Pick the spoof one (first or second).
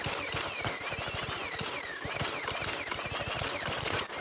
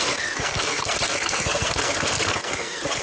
second